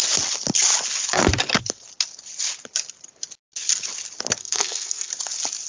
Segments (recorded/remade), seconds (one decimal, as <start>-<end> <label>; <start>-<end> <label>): 0.0-4.4 recorded; 4.4-5.1 remade; 5.1-5.7 recorded